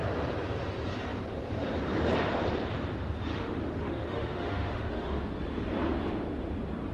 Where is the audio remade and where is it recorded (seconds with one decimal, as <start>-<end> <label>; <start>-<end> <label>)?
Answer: 0.0-3.3 recorded; 3.3-5.2 remade; 5.2-6.9 recorded